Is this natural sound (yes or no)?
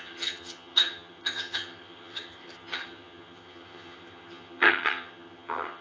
no